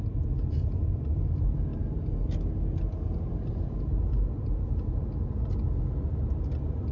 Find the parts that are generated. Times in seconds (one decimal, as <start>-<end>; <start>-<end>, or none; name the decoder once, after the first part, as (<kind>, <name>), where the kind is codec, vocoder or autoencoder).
none